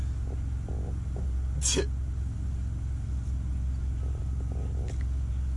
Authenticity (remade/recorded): recorded